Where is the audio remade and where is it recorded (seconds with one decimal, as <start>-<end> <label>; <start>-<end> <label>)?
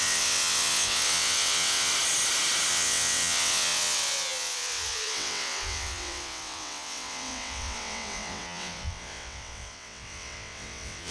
0.0-1.9 remade; 1.9-2.7 recorded; 2.7-11.1 remade